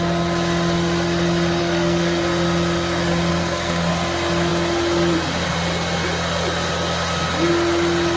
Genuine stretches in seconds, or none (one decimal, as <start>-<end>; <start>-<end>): 0.0-1.6; 2.2-3.3; 3.9-8.2